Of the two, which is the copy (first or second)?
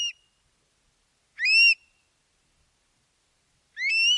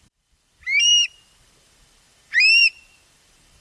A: second